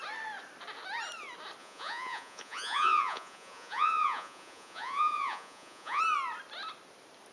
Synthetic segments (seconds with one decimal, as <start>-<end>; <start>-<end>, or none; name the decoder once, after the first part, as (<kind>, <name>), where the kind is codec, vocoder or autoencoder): 1.6-6.0 (vocoder, Vocos)